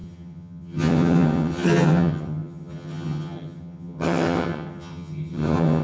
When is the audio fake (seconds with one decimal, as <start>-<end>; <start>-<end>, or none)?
0.0-5.8